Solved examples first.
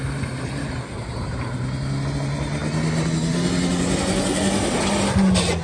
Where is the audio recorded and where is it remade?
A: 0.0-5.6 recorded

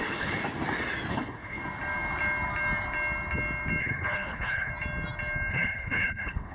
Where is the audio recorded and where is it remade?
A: 0.0-0.4 remade; 0.4-1.1 recorded; 1.1-1.6 remade; 1.6-3.8 recorded; 3.8-4.7 remade; 4.7-5.5 recorded; 5.5-6.5 remade